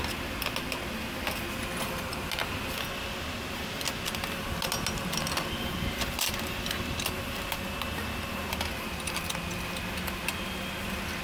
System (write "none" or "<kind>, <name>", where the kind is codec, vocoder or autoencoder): none